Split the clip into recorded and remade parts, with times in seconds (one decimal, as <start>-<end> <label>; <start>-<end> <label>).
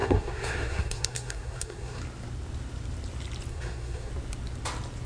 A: 0.0-2.0 remade; 2.0-3.5 recorded; 3.5-4.1 remade; 4.1-5.1 recorded